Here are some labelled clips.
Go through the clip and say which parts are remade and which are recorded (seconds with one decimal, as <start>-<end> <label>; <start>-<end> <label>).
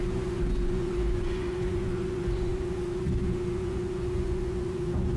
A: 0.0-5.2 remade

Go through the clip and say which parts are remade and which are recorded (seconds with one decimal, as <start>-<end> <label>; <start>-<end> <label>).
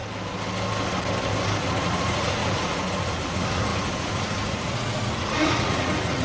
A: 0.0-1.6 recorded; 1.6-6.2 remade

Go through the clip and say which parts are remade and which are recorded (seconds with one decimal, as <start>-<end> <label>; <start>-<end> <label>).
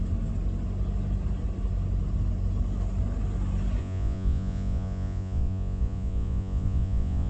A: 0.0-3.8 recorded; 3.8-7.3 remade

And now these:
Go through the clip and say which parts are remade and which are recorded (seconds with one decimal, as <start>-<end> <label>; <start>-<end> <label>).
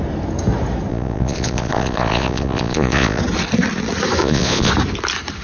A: 0.0-0.9 recorded; 0.9-3.2 remade; 3.2-4.2 recorded; 4.2-4.7 remade; 4.7-5.4 recorded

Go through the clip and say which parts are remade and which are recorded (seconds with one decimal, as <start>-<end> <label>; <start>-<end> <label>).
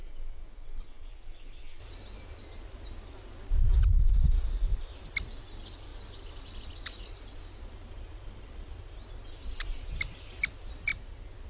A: 0.0-1.8 remade; 1.8-11.5 recorded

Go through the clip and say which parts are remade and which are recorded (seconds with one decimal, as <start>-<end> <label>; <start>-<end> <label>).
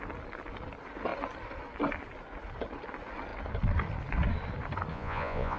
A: 0.0-4.9 recorded; 4.9-5.6 remade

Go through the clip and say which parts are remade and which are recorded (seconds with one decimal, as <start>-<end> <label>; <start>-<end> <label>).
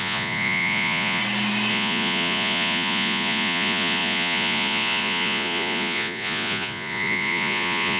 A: 0.0-1.2 remade; 1.2-1.7 recorded; 1.7-8.0 remade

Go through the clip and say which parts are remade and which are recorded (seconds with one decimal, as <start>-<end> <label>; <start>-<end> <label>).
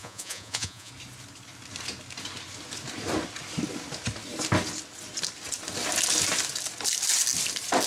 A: 0.0-0.9 remade; 0.9-7.9 recorded